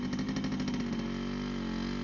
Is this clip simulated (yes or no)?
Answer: no